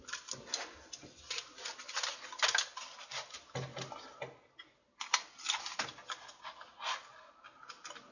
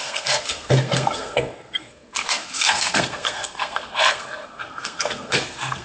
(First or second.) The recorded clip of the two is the first